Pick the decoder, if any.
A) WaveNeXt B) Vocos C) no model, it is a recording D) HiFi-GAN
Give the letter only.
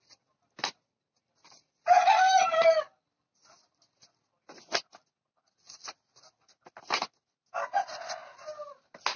C